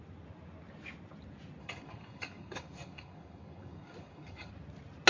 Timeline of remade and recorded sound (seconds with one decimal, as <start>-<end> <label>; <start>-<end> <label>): 0.0-1.6 recorded; 1.6-4.5 remade; 4.5-5.1 recorded